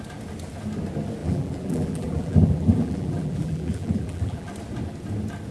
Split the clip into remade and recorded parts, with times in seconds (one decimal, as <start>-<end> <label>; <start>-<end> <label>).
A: 0.0-1.2 recorded; 1.2-4.5 remade; 4.5-5.5 recorded